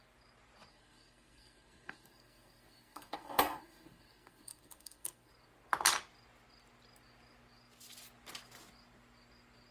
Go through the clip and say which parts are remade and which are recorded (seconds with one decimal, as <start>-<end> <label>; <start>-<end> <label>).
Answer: 0.0-0.7 recorded; 0.7-5.3 remade; 5.3-9.7 recorded